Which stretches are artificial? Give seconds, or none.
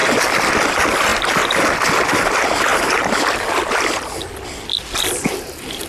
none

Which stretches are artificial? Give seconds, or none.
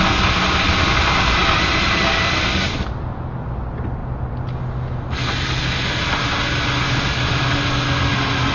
none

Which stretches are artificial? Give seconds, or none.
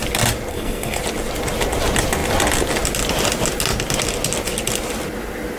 0.5-1.0 (codec, SNAC)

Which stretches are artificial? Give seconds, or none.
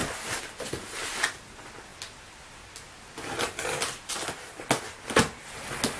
1.9-4.8 (vocoder, BigVGAN v2)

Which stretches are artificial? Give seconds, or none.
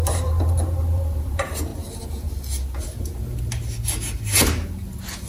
0.0-1.7 (vocoder, BigVGAN v2)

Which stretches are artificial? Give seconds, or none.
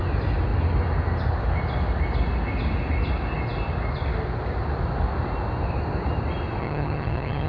6.6-7.5 (vocoder, HiFi-GAN)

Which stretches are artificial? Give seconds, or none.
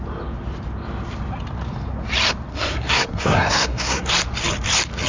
2.5-4.1 (codec, SNAC)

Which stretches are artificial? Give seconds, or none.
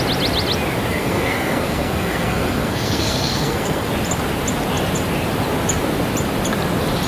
0.9-3.9 (codec, SNAC)